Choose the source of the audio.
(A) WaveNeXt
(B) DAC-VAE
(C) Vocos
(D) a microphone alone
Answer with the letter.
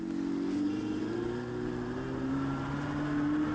D